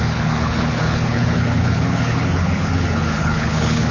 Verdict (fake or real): fake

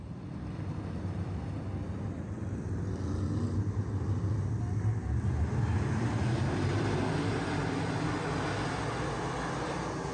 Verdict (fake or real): real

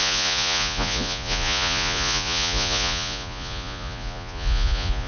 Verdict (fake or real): fake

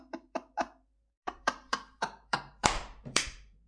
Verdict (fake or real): fake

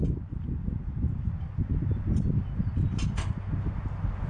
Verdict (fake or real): real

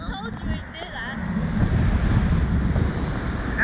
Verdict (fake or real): real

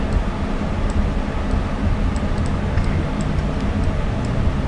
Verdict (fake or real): real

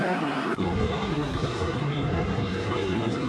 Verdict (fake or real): fake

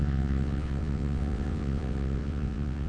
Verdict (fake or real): fake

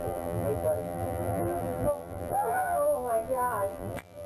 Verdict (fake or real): fake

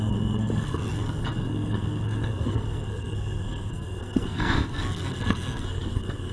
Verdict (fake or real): fake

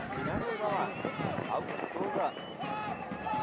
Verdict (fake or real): real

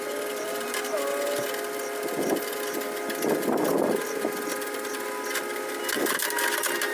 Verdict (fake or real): real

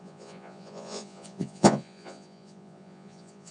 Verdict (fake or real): fake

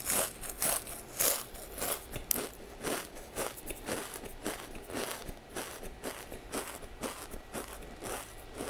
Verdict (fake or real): real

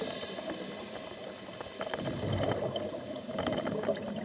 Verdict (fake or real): fake